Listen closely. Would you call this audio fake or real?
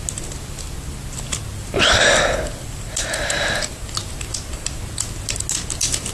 real